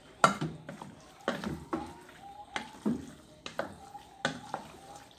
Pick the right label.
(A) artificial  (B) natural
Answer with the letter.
B